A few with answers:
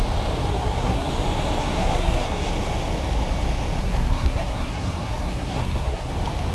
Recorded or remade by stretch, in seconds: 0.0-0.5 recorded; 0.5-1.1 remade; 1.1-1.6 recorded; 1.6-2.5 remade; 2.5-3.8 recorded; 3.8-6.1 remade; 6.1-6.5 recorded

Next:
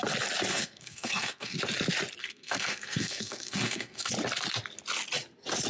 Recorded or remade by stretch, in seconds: 0.0-0.5 recorded; 0.5-1.6 remade; 1.6-2.2 recorded; 2.2-4.1 remade; 4.1-5.7 recorded

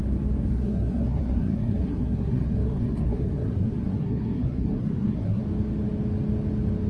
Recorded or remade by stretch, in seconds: 0.0-0.5 recorded; 0.5-5.4 remade; 5.4-6.9 recorded

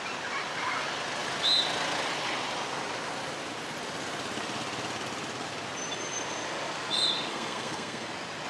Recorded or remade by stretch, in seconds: 0.0-7.3 recorded; 7.3-8.1 remade; 8.1-8.5 recorded

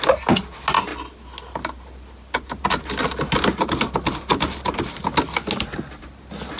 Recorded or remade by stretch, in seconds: 0.0-6.6 recorded

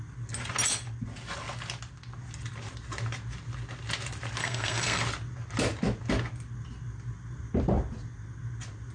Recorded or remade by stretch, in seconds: 0.0-4.4 recorded; 4.4-5.0 remade; 5.0-8.9 recorded